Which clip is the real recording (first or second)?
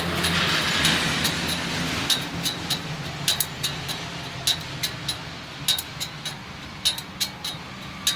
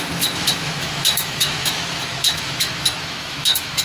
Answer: first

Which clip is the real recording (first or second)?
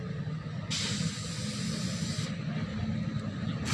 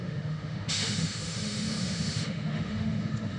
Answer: first